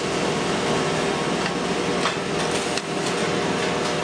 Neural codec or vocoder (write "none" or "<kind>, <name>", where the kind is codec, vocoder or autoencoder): none